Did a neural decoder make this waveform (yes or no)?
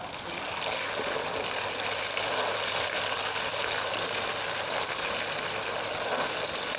no